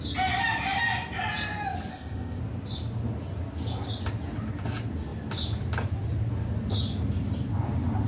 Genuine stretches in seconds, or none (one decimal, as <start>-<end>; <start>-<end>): 0.0-1.9; 2.4-8.1